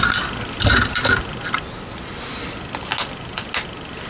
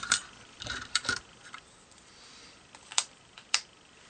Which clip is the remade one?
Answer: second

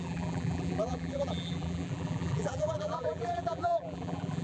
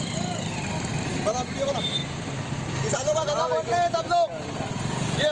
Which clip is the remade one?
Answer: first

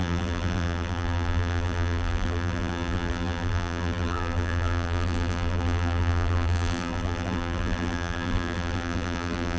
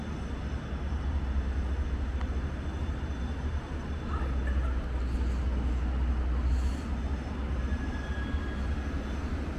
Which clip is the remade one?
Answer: first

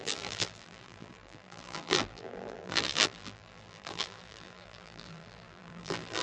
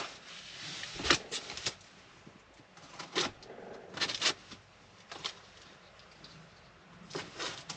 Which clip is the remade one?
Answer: first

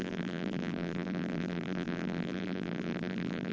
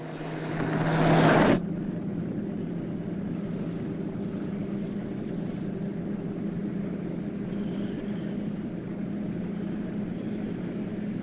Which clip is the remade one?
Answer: first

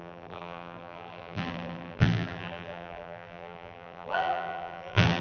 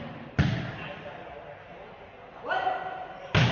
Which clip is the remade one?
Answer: first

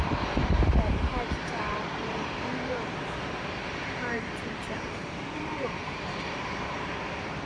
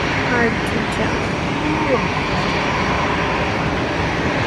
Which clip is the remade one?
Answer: first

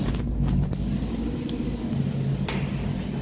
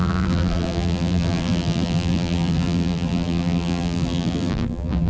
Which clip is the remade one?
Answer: second